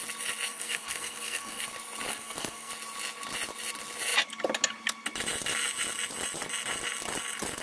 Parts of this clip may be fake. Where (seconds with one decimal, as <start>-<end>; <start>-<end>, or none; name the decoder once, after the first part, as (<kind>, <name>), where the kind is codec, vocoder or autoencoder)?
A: 0.5-1.7 (codec, SNAC); 2.1-2.7